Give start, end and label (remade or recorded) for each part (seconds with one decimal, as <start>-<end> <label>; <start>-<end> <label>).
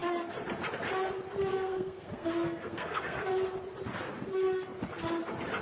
0.0-1.5 recorded; 1.5-3.3 remade; 3.3-5.6 recorded